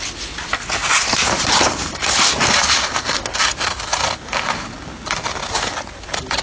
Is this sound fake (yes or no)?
no